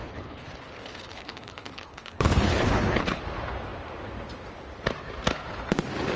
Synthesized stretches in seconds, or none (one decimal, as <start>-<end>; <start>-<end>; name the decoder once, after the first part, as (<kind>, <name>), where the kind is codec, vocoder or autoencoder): 0.0-3.2 (codec, HILCodec)